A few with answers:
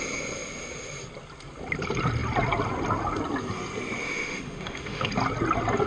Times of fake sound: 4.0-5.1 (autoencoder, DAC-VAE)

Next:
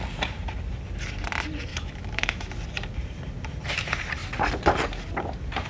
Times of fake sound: 1.7-2.5 (autoencoder, DAC-VAE)

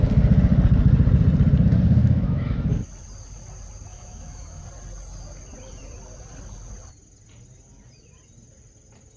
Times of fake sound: 2.0-2.7 (autoencoder, DAC-VAE); 3.9-4.6

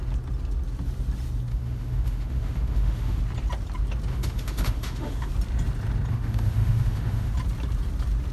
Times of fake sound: 1.5-3.2 (autoencoder, DAC-VAE); 4.1-5.3; 6.1-7.3

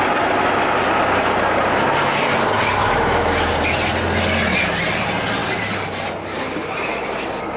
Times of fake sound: 2.8-3.5 (autoencoder, DAC-VAE)

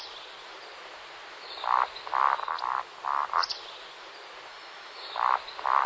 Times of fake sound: 4.5-5.1 (autoencoder, DAC-VAE)